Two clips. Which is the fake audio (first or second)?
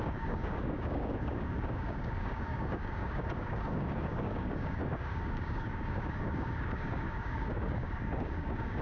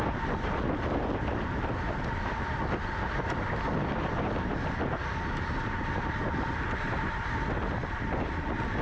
first